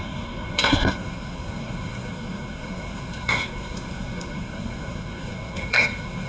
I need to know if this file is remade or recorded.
remade